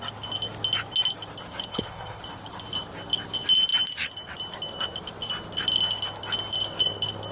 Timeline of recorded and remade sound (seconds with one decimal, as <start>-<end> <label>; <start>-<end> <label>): 0.0-1.7 recorded; 1.7-2.2 remade; 2.2-7.3 recorded